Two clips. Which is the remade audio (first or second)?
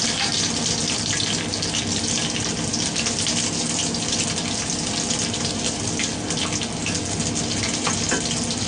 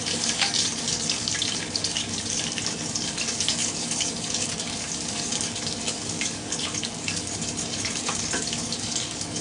second